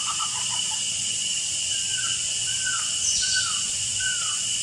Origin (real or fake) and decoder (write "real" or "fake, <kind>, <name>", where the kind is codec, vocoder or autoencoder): fake, vocoder, Vocos